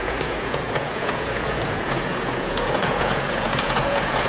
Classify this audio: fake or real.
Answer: fake